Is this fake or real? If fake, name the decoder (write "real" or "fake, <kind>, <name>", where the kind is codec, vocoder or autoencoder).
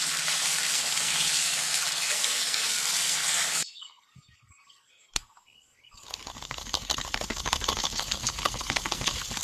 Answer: fake, codec, SNAC